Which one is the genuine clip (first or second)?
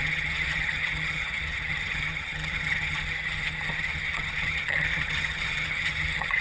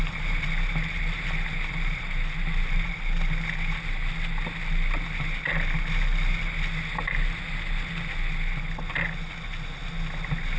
second